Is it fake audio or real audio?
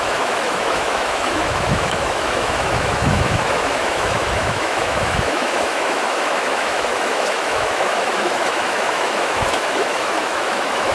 fake